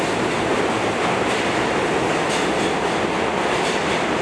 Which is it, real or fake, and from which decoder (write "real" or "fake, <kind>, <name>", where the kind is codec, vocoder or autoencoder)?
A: real